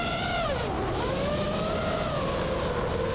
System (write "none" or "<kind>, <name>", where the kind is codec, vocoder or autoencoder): none